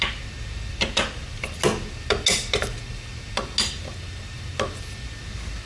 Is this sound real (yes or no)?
yes